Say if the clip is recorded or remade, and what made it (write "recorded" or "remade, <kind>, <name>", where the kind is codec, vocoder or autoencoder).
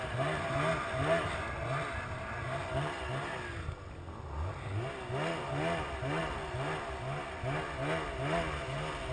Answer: recorded